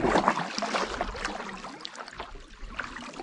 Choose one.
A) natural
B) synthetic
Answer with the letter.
A